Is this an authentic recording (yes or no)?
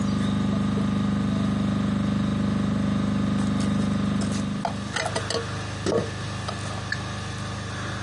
yes